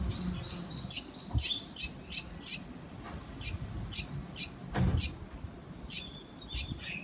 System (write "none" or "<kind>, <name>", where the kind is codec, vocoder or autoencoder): none